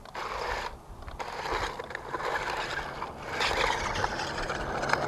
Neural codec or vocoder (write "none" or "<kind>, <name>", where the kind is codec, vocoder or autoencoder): none